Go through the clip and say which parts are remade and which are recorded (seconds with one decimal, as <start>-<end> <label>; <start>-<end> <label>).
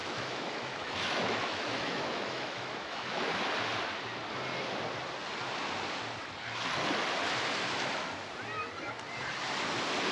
0.0-3.4 remade; 3.4-10.1 recorded